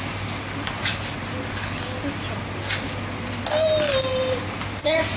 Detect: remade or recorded recorded